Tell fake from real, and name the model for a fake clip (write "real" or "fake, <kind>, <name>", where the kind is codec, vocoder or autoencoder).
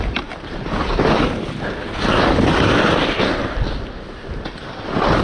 real